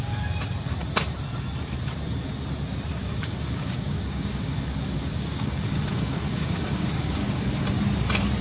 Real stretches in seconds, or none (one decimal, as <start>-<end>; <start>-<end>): 0.0-3.0; 7.4-8.4

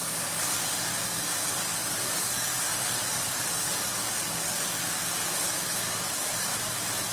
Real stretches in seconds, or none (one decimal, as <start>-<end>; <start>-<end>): 0.9-1.5; 6.5-7.1

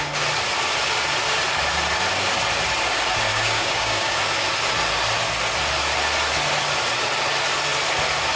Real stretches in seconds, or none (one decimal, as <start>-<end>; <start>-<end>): 0.0-3.3; 4.2-8.4

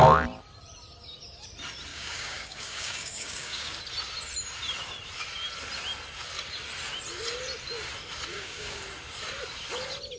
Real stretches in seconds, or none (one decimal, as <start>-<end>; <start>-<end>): 0.0-1.9; 3.8-8.3; 8.8-10.2

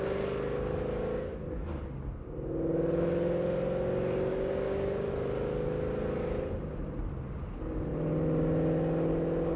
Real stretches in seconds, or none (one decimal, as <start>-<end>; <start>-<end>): 0.0-4.3; 5.1-9.6

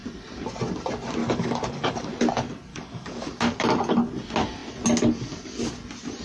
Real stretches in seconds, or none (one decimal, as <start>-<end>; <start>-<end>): 0.0-1.2; 2.1-2.7; 3.3-6.2